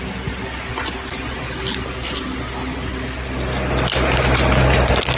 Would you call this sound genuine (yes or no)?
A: yes